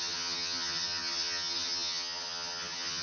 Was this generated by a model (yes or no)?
yes